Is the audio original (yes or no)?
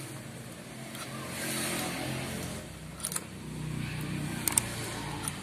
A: yes